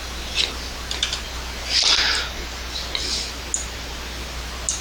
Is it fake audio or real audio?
real